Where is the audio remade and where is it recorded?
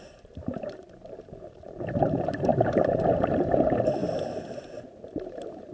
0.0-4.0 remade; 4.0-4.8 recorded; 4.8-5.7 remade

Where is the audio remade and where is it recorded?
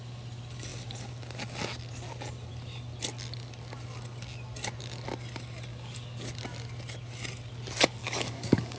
0.0-5.7 recorded; 5.7-6.3 remade; 6.3-8.0 recorded; 8.0-8.8 remade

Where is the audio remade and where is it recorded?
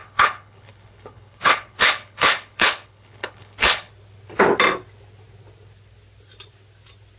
0.0-3.9 remade; 3.9-7.2 recorded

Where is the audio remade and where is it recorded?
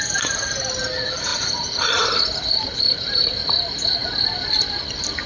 0.0-5.3 recorded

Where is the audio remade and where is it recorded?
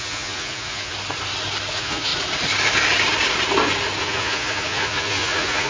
0.0-0.9 remade; 0.9-1.7 recorded; 1.7-2.1 remade; 2.1-4.0 recorded; 4.0-5.7 remade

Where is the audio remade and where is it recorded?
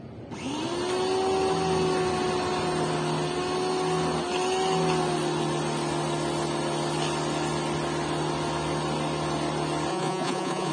0.0-9.9 recorded; 9.9-10.7 remade